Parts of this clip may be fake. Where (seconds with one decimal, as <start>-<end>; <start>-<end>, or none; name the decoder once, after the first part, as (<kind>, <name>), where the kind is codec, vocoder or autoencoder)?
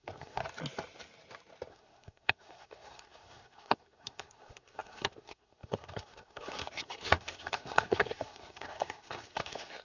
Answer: 0.0-0.4 (codec, SNAC); 1.7-9.8